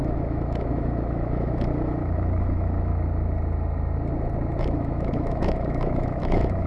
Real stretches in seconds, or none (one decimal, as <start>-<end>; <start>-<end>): 2.9-4.6